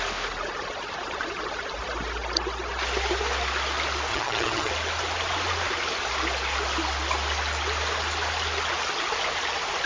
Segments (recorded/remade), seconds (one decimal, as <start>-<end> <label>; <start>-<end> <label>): 0.0-4.1 recorded; 4.1-4.7 remade; 4.7-9.9 recorded